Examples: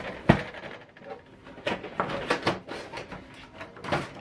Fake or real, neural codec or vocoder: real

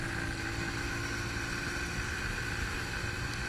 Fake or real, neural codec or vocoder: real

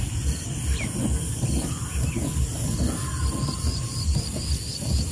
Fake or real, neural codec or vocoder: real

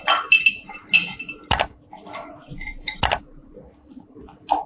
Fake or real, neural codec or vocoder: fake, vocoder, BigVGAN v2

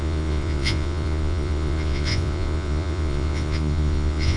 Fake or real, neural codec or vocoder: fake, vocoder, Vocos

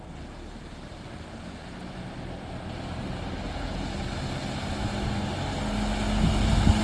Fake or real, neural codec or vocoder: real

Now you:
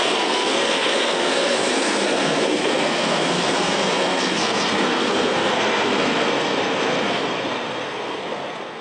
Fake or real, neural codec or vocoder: fake, codec, SNAC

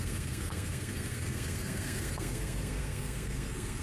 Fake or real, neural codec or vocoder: fake, codec, SNAC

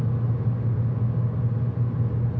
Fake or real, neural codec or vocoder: real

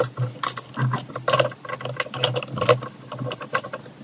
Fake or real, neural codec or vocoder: real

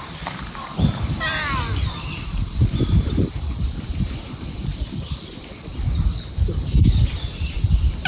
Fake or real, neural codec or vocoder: fake, vocoder, BigVGAN v2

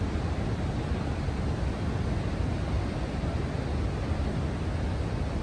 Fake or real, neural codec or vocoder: real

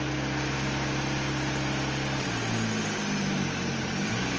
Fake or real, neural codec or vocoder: real